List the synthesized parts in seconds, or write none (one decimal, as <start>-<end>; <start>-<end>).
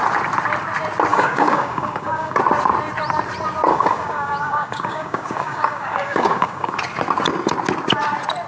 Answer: 1.1-2.4; 3.7-6.8